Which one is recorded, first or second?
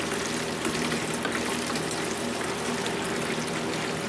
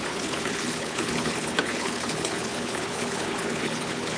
first